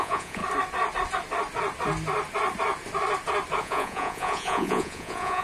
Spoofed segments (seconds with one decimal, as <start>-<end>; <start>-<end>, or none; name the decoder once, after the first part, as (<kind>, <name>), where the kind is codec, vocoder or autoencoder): 0.0-0.4 (vocoder, Vocos); 3.6-5.4